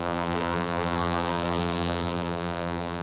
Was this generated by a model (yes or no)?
yes